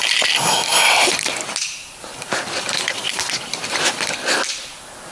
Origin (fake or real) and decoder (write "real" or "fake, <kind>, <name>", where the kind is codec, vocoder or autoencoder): real